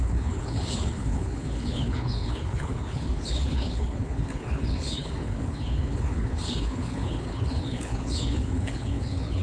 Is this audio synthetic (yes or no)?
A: yes